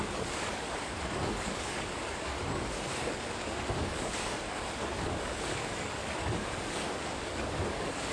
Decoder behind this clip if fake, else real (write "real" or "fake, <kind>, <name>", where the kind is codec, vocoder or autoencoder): fake, codec, DAC